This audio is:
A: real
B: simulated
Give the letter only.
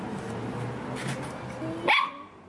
A